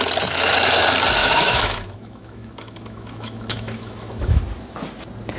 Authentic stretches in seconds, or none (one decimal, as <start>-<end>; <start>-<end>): 0.0-1.2; 4.4-5.4